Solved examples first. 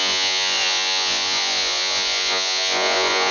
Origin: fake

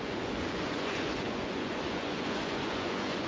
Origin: fake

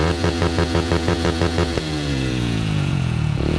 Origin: fake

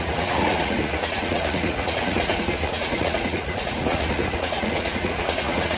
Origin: fake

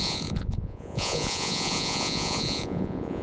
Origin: fake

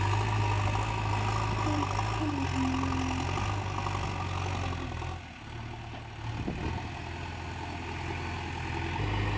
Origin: real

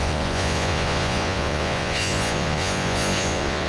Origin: fake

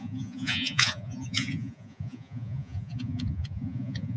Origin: fake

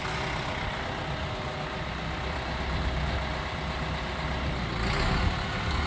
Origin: real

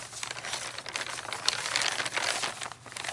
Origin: real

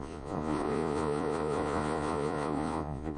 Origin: fake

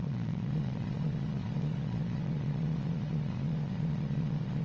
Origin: fake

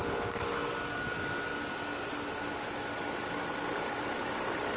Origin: real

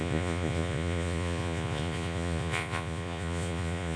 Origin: fake